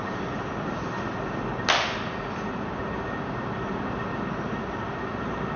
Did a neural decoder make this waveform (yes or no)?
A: no